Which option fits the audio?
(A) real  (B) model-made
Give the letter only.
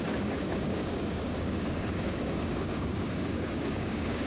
B